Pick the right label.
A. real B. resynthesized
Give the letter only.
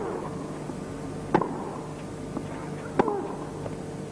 A